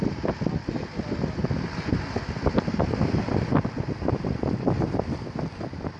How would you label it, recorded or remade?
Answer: recorded